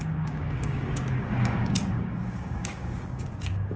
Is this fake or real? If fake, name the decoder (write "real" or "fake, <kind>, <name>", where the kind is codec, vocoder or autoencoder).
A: fake, codec, DAC